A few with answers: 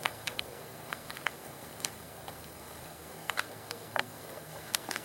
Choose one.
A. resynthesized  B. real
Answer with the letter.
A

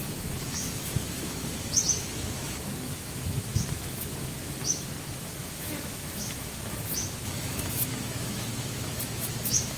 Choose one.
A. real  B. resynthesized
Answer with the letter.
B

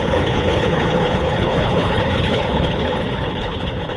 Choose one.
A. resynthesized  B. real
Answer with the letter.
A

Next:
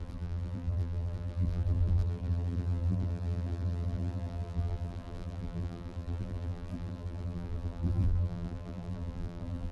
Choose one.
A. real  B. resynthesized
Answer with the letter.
B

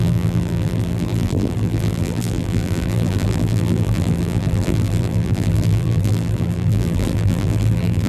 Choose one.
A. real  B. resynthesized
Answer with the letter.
B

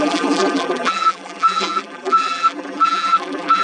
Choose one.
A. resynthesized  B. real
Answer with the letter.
A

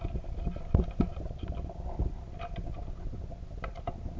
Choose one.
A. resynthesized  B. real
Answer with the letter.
B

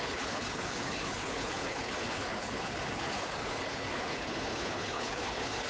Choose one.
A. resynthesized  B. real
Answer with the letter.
A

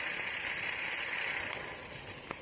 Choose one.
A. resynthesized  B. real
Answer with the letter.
B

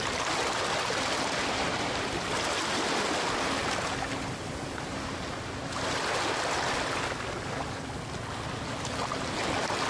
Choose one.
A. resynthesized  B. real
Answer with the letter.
B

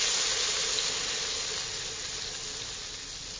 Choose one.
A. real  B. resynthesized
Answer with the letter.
A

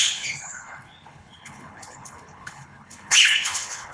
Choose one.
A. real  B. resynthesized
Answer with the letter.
B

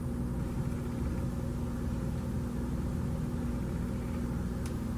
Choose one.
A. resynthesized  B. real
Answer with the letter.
B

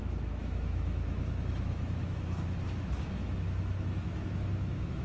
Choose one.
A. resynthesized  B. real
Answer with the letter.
A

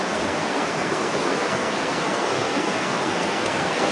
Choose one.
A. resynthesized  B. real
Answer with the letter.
A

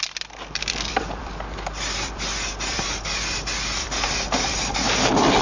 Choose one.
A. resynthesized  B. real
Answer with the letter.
A